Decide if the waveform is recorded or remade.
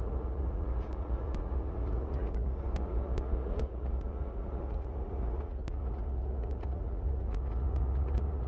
remade